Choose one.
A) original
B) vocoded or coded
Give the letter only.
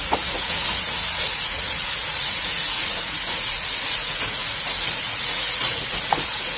B